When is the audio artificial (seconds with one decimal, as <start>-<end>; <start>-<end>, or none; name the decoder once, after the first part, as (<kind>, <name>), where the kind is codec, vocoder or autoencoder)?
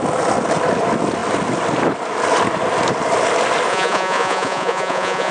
3.7-5.3 (vocoder, Vocos)